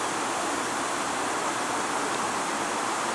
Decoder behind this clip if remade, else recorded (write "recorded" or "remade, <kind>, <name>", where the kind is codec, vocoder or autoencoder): recorded